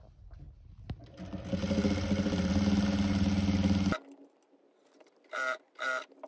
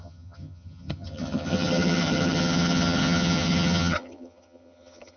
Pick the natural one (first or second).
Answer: first